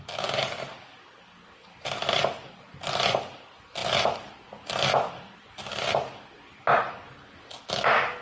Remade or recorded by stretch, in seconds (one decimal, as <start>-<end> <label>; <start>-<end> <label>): 0.0-8.2 recorded